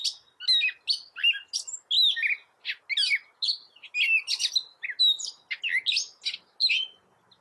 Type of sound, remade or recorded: recorded